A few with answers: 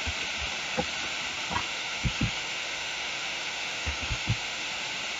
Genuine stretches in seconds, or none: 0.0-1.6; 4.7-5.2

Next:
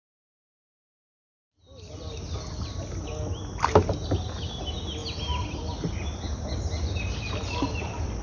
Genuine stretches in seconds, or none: 0.0-8.2

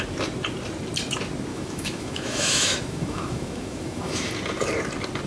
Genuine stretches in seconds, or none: 0.0-1.5; 4.3-5.3